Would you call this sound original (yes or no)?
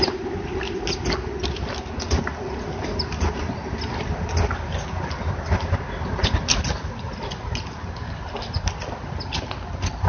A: yes